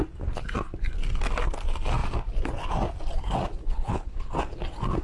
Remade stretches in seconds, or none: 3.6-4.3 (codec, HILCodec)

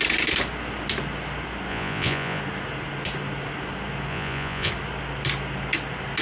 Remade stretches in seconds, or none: 1.7-2.4 (vocoder, Vocos); 4.1-4.7

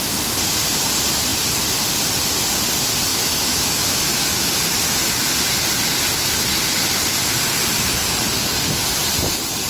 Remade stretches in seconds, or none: 3.1-4.1 (autoencoder, DAC-VAE)

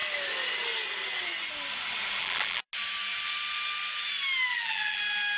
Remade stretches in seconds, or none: 2.2-2.7 (vocoder, BigVGAN v2); 4.5-5.0